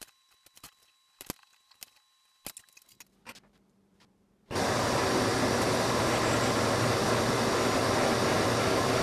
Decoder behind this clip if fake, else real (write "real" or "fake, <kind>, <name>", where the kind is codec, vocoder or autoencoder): real